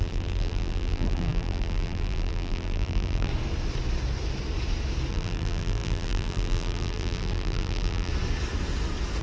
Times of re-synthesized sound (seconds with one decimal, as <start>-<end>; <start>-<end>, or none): 0.0-3.3; 5.1-8.1